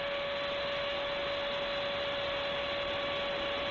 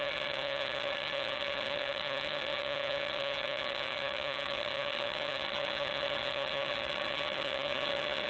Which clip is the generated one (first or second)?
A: second